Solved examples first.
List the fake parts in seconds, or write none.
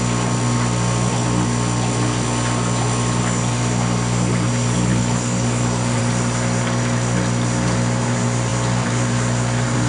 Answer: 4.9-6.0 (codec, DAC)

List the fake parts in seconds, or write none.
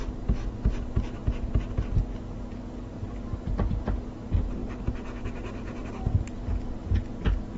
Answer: none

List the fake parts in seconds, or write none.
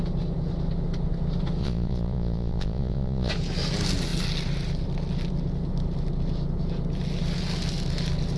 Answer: 1.6-3.3 (vocoder, Vocos)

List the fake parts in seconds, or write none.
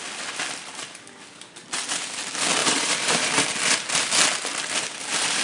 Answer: 2.6-3.3 (vocoder, BigVGAN v2)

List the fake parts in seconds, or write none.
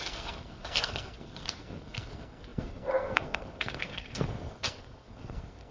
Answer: 0.0-5.7 (codec, SNAC)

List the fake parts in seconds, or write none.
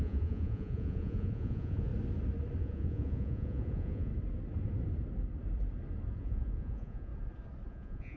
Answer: 0.0-1.9 (vocoder, Vocos); 2.6-4.1; 6.2-7.1; 7.7-8.2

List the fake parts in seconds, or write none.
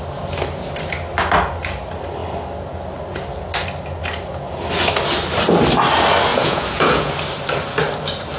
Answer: 6.3-7.1 (vocoder, Vocos)